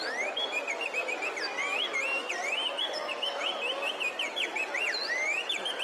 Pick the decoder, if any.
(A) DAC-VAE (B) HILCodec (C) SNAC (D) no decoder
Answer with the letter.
D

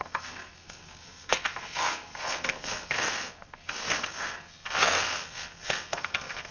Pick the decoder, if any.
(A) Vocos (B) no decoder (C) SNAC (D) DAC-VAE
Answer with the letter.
C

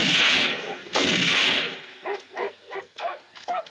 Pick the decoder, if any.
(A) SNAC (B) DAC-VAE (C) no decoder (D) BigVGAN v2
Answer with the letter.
A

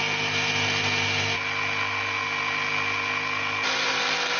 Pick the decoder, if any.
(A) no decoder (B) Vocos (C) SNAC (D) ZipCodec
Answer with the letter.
A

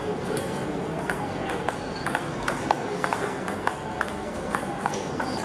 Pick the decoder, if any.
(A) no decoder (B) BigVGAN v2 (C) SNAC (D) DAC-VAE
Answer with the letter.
C